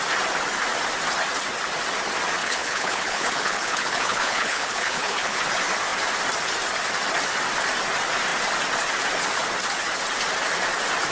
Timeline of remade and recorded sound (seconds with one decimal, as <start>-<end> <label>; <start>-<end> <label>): 0.0-2.4 recorded; 2.4-5.4 remade; 5.4-11.1 recorded